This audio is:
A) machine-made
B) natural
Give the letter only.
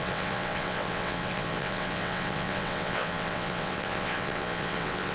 A